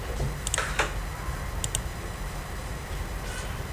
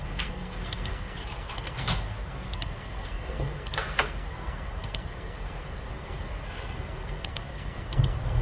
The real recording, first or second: first